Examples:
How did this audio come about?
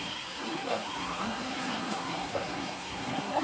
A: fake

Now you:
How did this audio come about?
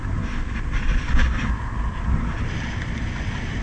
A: real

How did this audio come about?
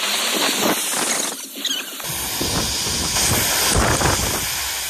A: real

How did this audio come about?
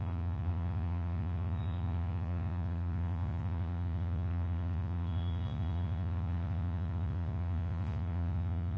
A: fake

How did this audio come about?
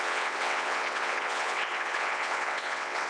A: fake